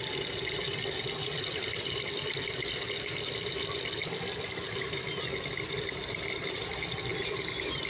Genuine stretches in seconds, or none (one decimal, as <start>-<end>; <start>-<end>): 0.0-7.9